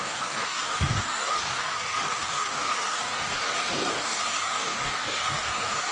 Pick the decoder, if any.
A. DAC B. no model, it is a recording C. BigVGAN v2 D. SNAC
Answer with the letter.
A